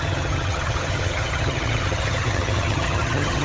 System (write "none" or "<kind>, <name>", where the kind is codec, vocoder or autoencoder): vocoder, HiFi-GAN